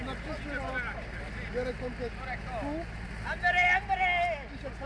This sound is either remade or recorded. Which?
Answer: recorded